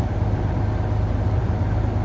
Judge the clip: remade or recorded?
remade